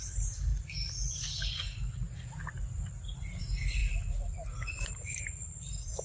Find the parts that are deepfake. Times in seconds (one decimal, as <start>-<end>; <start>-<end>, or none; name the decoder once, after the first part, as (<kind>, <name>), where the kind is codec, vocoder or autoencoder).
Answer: 0.0-0.5 (vocoder, BigVGAN v2); 3.4-3.8; 4.7-6.0